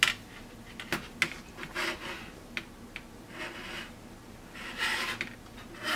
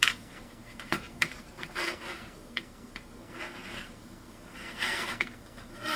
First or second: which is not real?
second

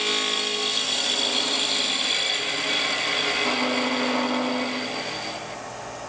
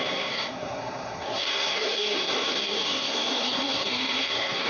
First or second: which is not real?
second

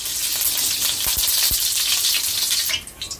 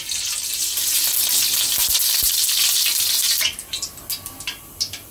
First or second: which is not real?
second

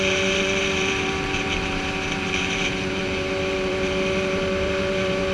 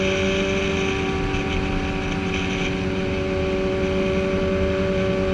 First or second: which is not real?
first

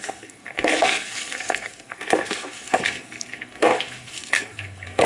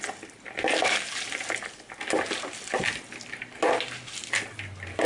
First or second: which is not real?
first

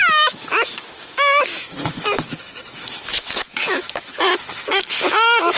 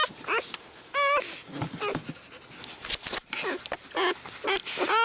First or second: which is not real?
first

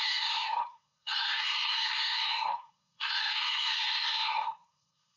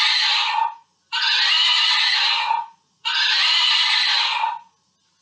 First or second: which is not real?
first